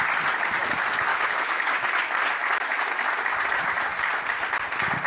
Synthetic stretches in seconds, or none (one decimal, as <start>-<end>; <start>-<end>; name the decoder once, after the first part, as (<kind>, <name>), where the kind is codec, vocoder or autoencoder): 1.1-1.9 (autoencoder, DAC-VAE); 2.4-3.1